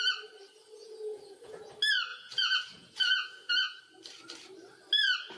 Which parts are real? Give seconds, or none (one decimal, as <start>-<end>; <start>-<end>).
0.0-0.8; 1.7-2.1; 3.8-5.4